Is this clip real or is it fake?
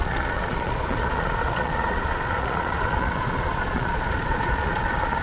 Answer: fake